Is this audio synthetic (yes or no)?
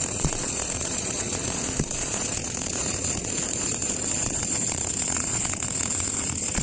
yes